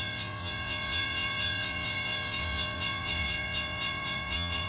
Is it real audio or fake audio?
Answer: fake